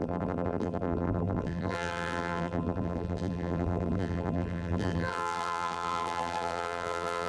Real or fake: fake